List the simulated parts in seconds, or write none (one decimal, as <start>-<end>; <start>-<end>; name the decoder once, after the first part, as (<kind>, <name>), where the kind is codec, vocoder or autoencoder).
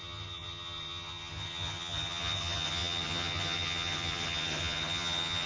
0.0-5.5 (vocoder, HiFi-GAN)